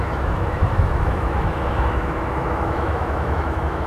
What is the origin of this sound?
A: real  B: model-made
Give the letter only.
B